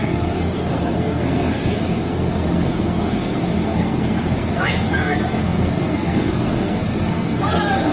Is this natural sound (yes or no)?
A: no